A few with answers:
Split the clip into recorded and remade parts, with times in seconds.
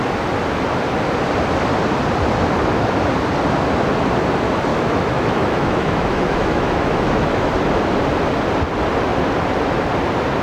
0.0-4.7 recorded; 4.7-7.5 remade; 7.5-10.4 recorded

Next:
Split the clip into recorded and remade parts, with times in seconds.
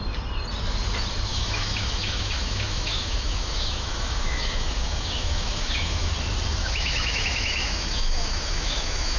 0.0-1.3 recorded; 1.3-6.1 remade; 6.1-6.6 recorded; 6.6-9.2 remade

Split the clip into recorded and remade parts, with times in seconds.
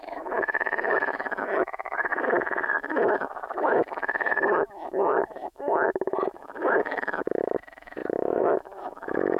0.0-9.4 remade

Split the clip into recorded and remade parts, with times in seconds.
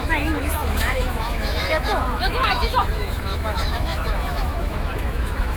0.0-5.6 remade